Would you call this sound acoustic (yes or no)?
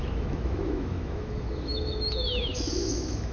no